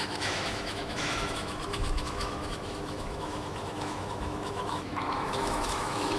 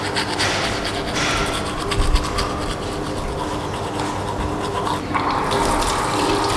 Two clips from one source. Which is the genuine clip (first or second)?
second